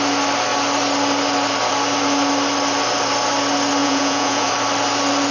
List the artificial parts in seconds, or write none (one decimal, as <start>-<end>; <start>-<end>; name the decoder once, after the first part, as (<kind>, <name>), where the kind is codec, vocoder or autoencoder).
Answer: 3.8-4.5 (vocoder, Vocos)